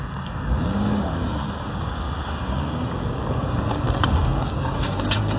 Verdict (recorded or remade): remade